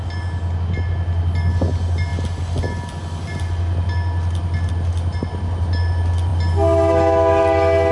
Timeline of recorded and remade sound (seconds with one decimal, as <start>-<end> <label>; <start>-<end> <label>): 0.0-7.9 recorded

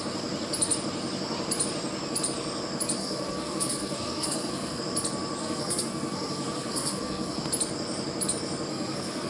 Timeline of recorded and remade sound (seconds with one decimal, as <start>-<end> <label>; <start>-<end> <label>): 0.0-3.0 recorded; 3.0-4.8 remade; 4.8-5.4 recorded; 5.4-7.5 remade; 7.5-8.7 recorded; 8.7-9.3 remade

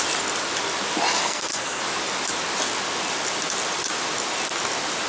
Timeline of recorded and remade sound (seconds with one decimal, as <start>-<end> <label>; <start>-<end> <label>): 0.0-1.2 recorded; 1.2-1.8 remade; 1.8-5.1 recorded

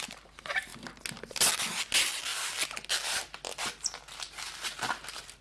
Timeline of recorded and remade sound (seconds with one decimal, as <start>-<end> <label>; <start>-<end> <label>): 0.0-5.4 recorded

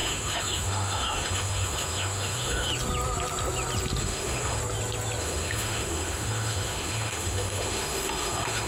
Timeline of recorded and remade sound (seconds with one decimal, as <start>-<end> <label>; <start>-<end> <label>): 0.0-2.7 remade; 2.7-4.0 recorded; 4.0-4.6 remade; 4.6-5.2 recorded; 5.2-8.7 remade

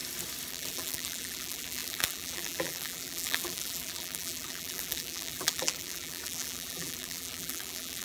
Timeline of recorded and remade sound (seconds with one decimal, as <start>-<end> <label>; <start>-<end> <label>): 0.0-0.5 recorded; 0.5-8.0 remade

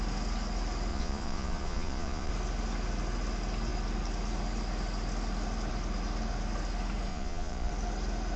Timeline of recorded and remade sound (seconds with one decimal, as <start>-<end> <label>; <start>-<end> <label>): 0.0-0.9 recorded; 0.9-2.3 remade; 2.3-7.1 recorded; 7.1-7.7 remade; 7.7-8.4 recorded

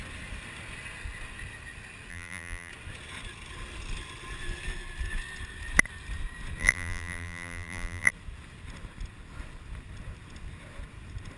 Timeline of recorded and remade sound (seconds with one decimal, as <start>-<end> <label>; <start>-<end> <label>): 0.0-2.1 recorded; 2.1-2.7 remade; 2.7-6.6 recorded; 6.6-8.1 remade; 8.1-11.4 recorded